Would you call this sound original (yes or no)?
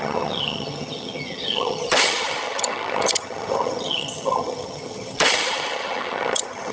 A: no